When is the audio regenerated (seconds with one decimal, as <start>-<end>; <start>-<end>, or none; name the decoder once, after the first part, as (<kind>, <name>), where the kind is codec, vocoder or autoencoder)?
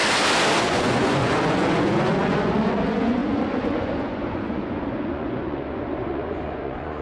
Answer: 0.6-7.0 (vocoder, Vocos)